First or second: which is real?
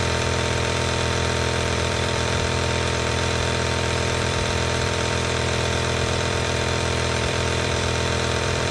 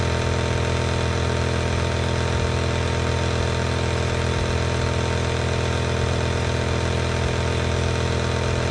second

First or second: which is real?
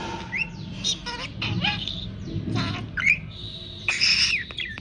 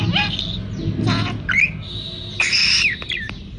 second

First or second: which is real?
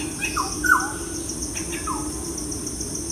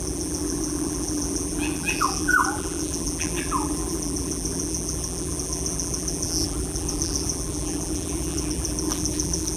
first